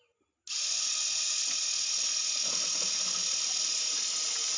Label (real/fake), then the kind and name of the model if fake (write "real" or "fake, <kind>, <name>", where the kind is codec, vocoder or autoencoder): real